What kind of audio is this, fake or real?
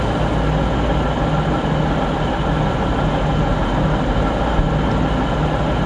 real